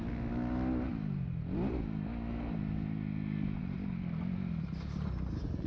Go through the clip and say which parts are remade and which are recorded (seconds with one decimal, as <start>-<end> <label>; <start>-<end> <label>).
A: 0.0-5.7 recorded